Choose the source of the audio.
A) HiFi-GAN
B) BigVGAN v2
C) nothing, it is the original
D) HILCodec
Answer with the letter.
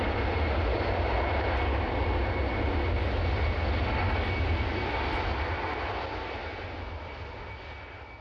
C